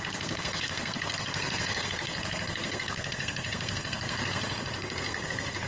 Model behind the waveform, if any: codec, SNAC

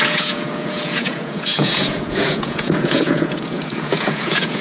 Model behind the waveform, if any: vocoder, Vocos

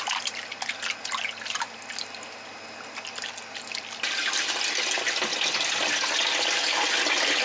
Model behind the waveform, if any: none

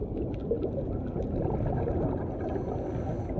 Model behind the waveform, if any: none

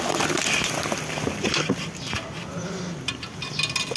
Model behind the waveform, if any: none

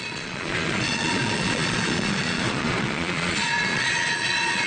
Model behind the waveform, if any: vocoder, Vocos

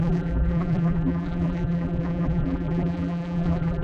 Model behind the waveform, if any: vocoder, BigVGAN v2